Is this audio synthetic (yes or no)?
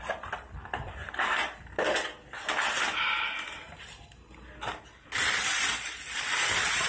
no